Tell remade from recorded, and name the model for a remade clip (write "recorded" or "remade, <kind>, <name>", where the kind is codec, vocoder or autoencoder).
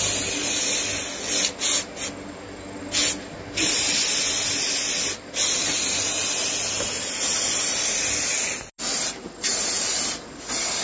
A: recorded